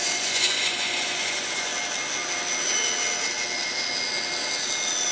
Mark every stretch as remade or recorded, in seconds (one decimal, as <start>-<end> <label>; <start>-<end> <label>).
0.0-1.7 remade; 1.7-5.1 recorded